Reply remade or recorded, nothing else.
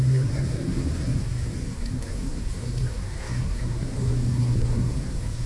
remade